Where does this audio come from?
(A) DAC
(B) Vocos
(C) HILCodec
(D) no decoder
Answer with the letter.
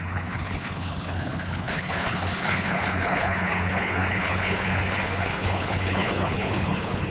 C